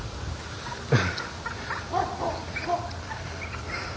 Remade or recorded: recorded